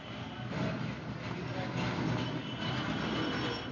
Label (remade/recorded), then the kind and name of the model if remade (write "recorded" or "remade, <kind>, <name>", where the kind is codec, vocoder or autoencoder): recorded